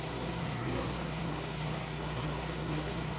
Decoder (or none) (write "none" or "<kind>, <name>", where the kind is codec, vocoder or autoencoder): codec, SNAC